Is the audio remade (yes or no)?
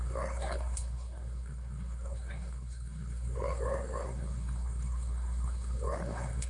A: yes